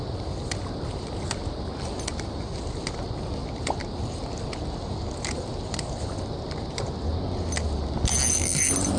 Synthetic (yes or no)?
no